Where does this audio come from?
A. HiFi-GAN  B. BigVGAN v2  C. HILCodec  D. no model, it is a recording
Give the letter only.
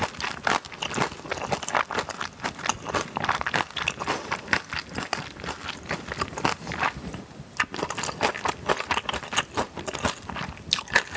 D